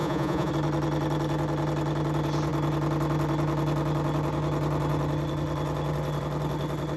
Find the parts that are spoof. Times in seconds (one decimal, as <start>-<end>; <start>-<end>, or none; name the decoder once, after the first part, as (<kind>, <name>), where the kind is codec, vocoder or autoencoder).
0.0-0.5 (vocoder, Vocos)